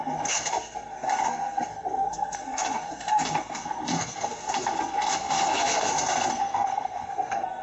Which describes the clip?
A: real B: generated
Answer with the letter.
B